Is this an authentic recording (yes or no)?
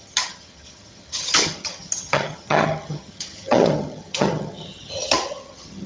no